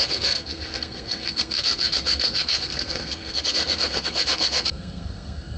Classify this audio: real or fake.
fake